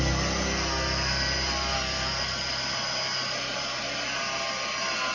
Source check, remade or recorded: recorded